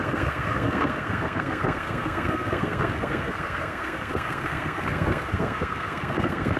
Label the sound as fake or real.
fake